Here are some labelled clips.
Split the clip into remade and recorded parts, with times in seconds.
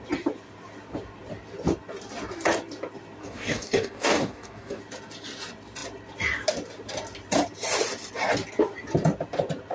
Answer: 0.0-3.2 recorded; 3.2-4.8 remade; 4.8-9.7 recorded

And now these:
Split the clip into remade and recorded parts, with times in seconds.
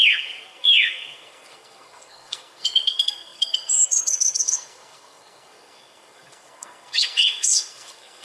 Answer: 0.0-8.2 remade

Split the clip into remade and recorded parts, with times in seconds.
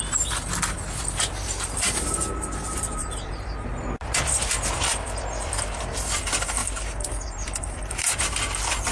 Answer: 0.0-3.0 recorded; 3.0-3.7 remade; 3.7-6.6 recorded; 6.6-8.2 remade; 8.2-8.9 recorded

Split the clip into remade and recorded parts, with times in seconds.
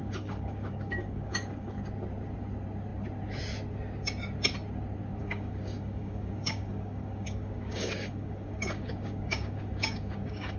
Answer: 0.0-1.9 remade; 1.9-5.2 recorded; 5.2-10.6 remade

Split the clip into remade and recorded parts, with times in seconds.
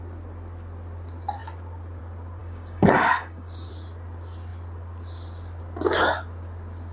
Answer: 0.0-2.4 recorded; 2.4-3.7 remade; 3.7-6.9 recorded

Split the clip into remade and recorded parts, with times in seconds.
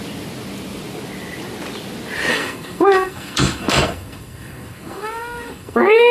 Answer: 0.0-2.3 recorded; 2.3-6.1 remade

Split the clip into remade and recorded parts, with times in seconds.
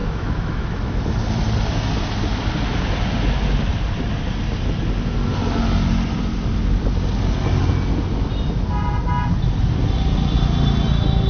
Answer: 0.0-1.0 remade; 1.0-11.3 recorded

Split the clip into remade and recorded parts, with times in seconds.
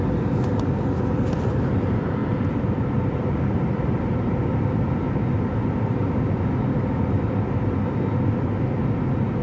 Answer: 0.0-9.4 recorded